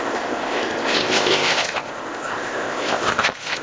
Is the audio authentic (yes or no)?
no